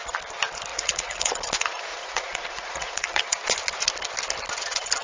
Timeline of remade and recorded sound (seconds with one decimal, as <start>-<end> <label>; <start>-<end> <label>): 0.0-0.7 recorded; 0.7-1.3 remade; 1.3-1.9 recorded; 1.9-3.2 remade; 3.2-5.0 recorded